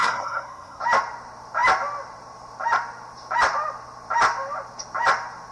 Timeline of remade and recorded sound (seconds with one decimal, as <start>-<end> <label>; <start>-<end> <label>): 0.0-0.8 remade; 0.8-5.5 recorded